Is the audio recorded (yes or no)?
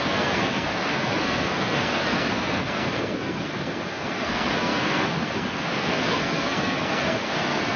no